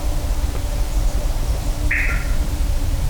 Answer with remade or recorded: remade